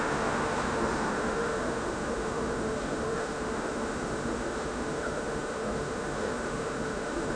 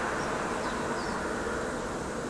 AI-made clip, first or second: first